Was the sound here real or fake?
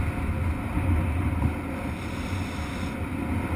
real